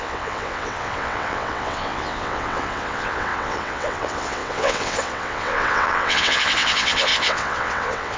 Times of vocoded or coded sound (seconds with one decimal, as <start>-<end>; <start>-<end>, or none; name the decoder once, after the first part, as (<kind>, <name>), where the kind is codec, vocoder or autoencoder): 0.0-8.2 (vocoder, WaveNeXt)